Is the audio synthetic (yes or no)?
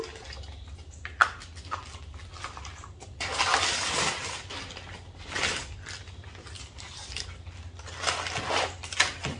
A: no